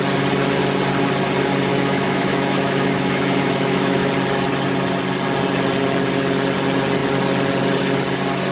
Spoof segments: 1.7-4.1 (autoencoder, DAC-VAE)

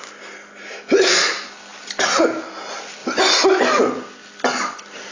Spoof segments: 1.7-2.2 (vocoder, BigVGAN v2)

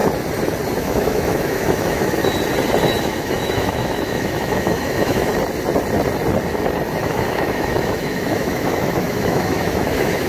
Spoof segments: 0.8-2.2 (autoencoder, DAC-VAE); 3.0-5.3; 7.0-10.3

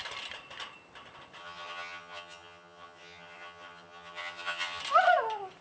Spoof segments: 1.4-4.8 (vocoder, HiFi-GAN)

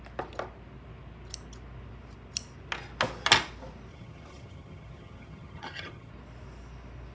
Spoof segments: 3.9-6.1 (vocoder, HiFi-GAN)